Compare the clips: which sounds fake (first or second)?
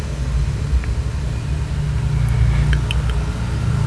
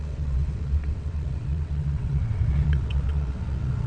second